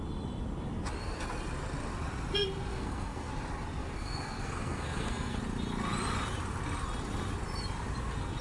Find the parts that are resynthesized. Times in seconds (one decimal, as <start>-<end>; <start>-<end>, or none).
2.7-3.3; 3.8-5.4